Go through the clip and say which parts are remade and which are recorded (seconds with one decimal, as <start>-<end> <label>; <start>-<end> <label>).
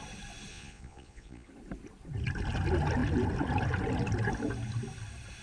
0.0-0.5 recorded; 0.5-1.5 remade; 1.5-5.4 recorded